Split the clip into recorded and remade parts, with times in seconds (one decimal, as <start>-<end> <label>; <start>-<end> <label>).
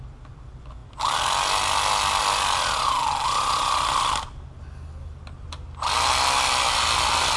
0.0-7.4 recorded